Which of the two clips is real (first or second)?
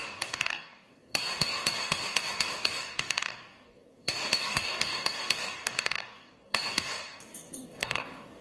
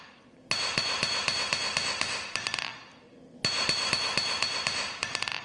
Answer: second